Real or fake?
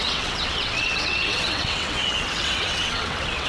fake